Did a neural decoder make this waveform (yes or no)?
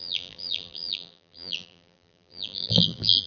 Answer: yes